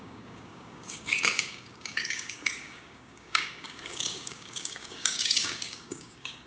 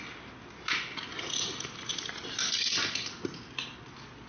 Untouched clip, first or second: second